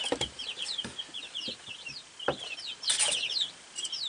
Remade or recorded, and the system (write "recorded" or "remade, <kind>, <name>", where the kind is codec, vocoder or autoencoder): recorded